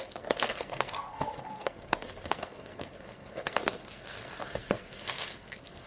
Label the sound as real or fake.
fake